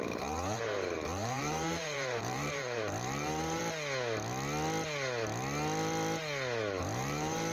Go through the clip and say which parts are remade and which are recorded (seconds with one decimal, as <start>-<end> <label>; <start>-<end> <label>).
0.0-3.6 remade; 3.6-6.8 recorded; 6.8-7.5 remade